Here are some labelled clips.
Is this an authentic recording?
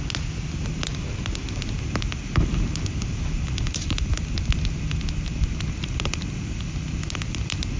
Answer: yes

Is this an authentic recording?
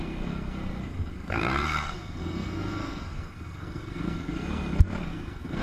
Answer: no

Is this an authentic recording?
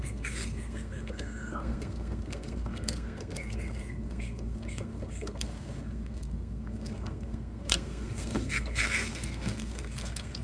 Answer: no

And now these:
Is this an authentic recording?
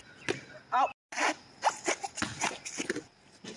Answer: yes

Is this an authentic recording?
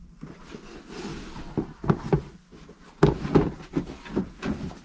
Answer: yes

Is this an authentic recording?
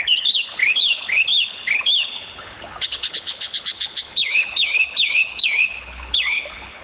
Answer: no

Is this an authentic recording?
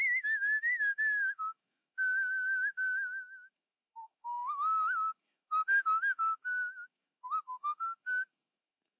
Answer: no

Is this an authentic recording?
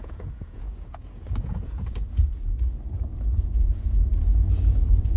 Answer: no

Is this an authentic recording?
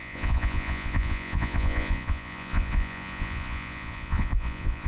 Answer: no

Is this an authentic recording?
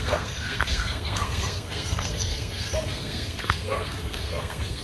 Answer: no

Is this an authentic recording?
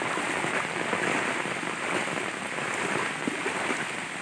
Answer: yes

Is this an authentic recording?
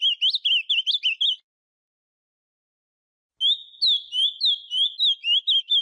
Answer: yes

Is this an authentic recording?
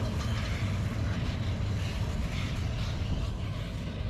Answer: yes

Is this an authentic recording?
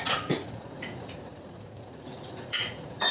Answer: no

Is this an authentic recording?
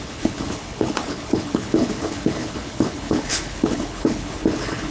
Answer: no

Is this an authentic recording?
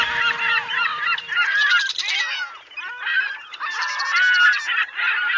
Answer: no